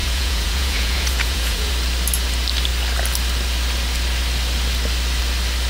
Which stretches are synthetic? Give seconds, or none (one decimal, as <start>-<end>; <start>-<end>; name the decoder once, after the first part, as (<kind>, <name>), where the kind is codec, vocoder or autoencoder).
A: 0.0-1.7 (vocoder, Vocos)